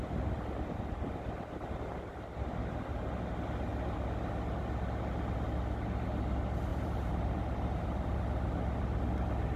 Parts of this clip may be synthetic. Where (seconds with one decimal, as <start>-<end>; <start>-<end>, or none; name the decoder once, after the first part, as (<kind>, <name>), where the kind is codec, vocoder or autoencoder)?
6.7-7.4 (vocoder, BigVGAN v2)